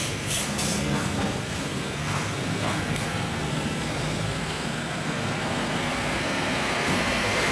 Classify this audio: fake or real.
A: fake